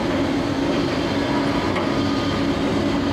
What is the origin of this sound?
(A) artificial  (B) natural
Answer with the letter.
B